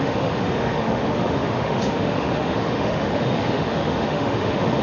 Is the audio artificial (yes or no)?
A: yes